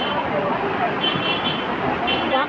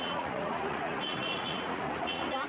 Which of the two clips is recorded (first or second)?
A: first